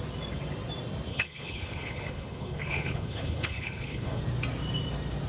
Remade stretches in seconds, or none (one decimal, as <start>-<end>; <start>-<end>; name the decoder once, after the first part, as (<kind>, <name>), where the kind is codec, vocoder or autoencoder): 1.1-4.2 (codec, HILCodec)